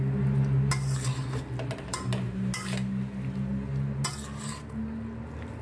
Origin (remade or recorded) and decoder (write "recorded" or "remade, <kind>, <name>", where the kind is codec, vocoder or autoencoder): recorded